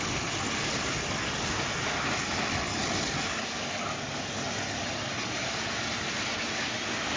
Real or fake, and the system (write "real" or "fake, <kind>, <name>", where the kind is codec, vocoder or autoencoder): real